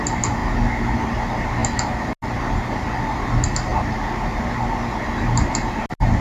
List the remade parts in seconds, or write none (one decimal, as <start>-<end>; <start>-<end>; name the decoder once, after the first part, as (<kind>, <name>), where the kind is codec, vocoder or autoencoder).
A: none